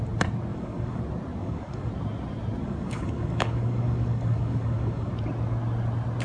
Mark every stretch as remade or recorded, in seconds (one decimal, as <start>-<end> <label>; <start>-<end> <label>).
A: 0.0-0.5 recorded; 0.5-1.0 remade; 1.0-1.4 recorded; 1.4-1.9 remade; 1.9-2.6 recorded; 2.6-5.1 remade; 5.1-6.2 recorded